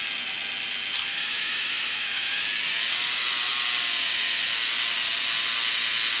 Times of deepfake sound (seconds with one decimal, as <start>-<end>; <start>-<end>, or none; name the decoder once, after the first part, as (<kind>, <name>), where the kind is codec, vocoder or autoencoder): 1.1-2.4 (autoencoder, DAC-VAE)